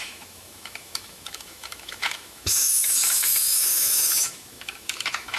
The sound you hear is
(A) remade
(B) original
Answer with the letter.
A